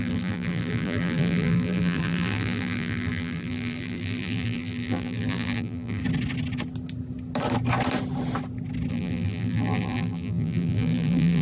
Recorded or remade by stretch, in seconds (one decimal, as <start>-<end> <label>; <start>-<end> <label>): 0.0-6.0 remade; 6.0-8.9 recorded; 8.9-11.4 remade